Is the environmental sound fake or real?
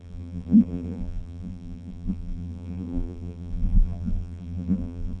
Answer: fake